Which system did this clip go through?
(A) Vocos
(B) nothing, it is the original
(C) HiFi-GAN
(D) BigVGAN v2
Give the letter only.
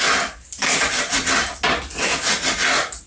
B